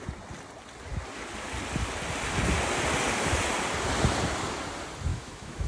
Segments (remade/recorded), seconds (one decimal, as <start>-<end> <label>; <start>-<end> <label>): 0.0-5.1 recorded; 5.1-5.7 remade